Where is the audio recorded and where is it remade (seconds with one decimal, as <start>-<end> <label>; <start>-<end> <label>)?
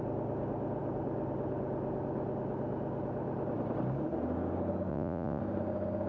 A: 0.0-4.9 recorded; 4.9-5.4 remade; 5.4-6.1 recorded